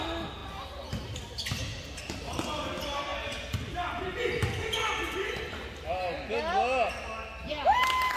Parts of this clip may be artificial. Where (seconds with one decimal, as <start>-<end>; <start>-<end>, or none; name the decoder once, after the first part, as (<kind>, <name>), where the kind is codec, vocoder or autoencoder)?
none